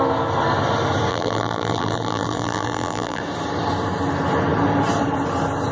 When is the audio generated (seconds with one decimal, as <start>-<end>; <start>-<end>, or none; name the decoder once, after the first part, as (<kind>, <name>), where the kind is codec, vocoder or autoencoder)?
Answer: 1.1-3.2 (vocoder, BigVGAN v2)